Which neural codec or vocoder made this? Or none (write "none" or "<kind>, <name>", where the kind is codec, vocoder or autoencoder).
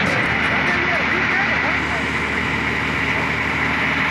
none